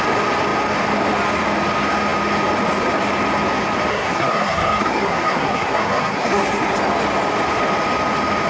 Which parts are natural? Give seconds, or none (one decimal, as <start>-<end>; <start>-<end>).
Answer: 0.0-3.9; 6.7-8.5